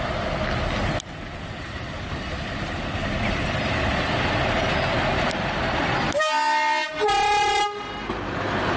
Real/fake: real